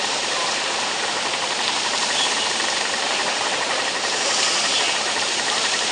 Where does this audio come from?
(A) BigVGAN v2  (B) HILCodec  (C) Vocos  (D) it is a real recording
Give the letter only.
A